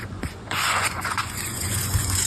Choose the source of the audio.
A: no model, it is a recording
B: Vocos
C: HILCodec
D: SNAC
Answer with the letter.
B